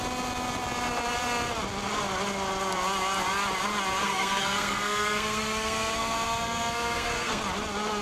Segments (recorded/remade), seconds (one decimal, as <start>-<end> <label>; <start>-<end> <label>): 0.0-4.0 recorded; 4.0-7.4 remade; 7.4-8.0 recorded